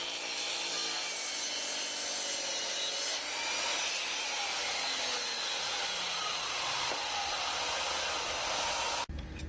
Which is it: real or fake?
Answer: real